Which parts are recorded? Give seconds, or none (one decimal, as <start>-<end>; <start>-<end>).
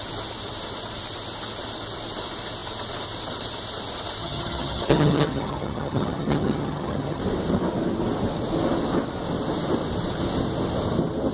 0.0-4.2; 7.2-11.3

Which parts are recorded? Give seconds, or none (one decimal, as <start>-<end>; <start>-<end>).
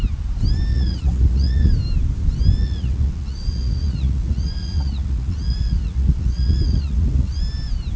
0.0-0.7; 1.7-2.6; 7.4-8.0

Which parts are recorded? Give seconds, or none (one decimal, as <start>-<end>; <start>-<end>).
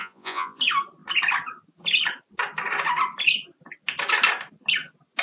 0.6-5.2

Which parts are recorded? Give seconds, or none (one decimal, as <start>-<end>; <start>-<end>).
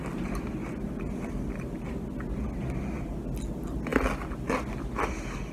0.0-5.5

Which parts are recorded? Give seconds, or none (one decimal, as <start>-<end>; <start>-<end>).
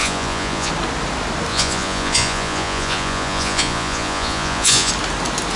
0.7-1.5; 4.9-5.6